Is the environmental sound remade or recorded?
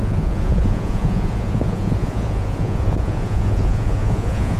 remade